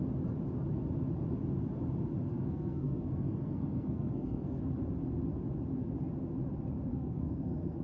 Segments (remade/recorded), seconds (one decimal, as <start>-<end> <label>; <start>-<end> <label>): 0.0-2.3 recorded; 2.3-4.6 remade; 4.6-6.9 recorded; 6.9-7.8 remade